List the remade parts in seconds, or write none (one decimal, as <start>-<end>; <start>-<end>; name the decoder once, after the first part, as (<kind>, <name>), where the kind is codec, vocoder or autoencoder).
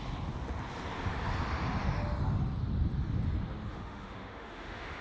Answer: 3.7-5.0 (autoencoder, DAC-VAE)